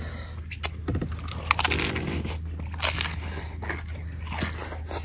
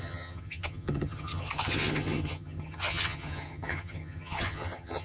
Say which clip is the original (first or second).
first